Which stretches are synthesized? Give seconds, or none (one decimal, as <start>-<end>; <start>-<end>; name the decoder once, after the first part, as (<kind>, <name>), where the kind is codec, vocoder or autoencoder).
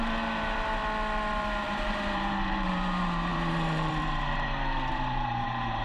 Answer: 0.0-0.8 (vocoder, BigVGAN v2); 1.4-5.8